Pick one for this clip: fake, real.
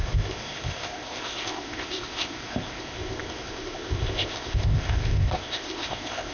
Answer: fake